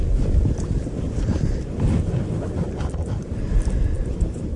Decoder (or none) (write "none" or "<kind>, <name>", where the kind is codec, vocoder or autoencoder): none